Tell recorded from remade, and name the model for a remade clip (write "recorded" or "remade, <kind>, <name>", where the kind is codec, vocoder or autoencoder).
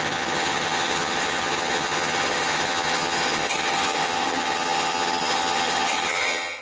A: remade, vocoder, HiFi-GAN